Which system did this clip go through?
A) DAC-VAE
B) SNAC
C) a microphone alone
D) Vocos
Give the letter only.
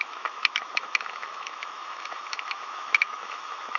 A